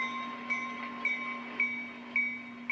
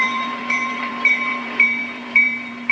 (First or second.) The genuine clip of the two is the first